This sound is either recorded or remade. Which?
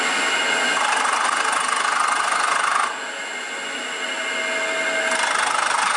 recorded